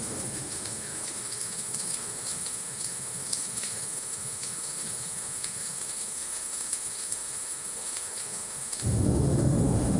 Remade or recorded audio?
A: remade